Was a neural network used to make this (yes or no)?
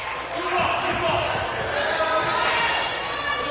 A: no